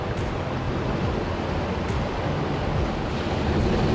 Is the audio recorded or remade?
recorded